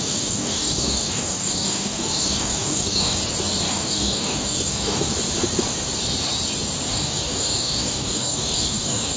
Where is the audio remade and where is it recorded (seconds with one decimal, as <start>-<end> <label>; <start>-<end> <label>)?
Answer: 0.0-3.2 remade; 3.2-3.7 recorded; 3.7-5.1 remade; 5.1-6.9 recorded; 6.9-9.2 remade